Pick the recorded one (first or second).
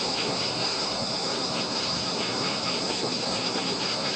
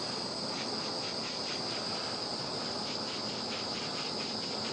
second